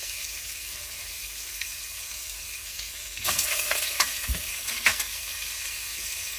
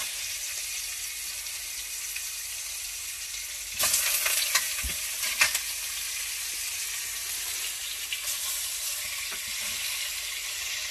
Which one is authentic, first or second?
second